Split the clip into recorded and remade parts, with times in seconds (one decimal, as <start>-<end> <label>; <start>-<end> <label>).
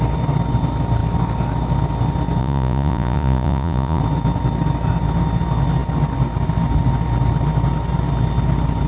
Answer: 0.0-2.4 recorded; 2.4-4.0 remade; 4.0-8.9 recorded